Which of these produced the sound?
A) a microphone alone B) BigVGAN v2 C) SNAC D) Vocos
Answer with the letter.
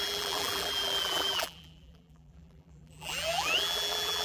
B